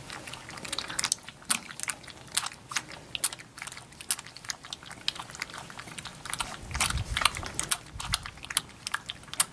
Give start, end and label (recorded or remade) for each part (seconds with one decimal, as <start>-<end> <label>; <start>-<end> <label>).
0.0-9.5 recorded